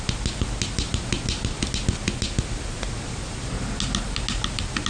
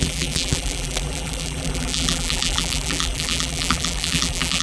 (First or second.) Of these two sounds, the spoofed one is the second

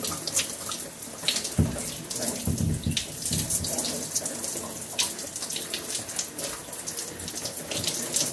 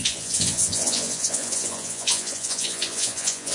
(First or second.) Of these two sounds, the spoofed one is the second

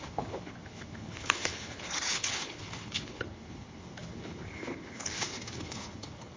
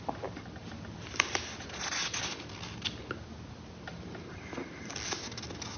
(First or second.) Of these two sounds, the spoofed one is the first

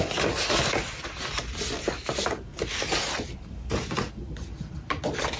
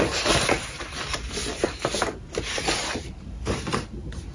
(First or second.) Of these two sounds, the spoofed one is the second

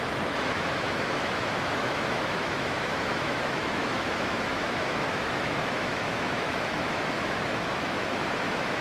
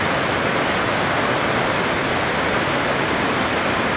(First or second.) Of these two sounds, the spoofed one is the first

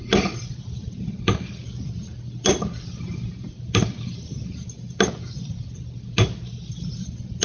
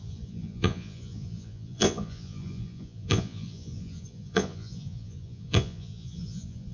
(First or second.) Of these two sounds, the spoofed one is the second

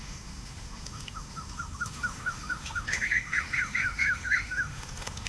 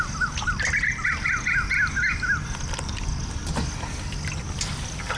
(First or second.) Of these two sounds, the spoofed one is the first